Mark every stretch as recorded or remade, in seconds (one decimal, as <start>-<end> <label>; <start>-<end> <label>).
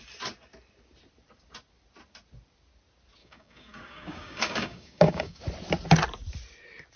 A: 0.0-3.2 recorded; 3.2-5.4 remade; 5.4-7.0 recorded